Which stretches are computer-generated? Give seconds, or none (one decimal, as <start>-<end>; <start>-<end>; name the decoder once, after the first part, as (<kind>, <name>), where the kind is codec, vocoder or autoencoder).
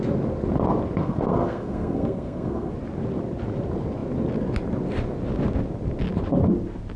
1.0-2.7 (codec, SNAC)